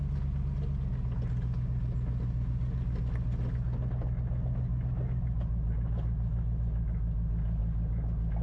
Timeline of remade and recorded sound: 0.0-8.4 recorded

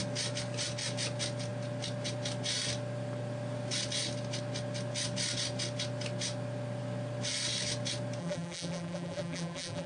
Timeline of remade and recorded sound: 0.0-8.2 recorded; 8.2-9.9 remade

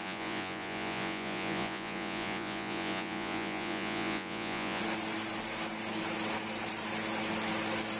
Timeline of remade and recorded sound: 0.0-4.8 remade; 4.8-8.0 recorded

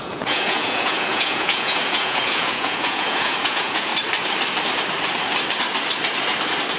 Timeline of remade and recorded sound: 0.0-3.9 remade; 3.9-6.8 recorded

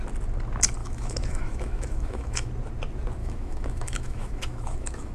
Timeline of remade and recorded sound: 0.0-0.8 recorded; 0.8-2.5 remade; 2.5-3.2 recorded; 3.2-5.1 remade